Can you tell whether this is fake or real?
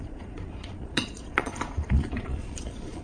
fake